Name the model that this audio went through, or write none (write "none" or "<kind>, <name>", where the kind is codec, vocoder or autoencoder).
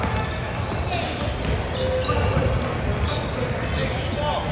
none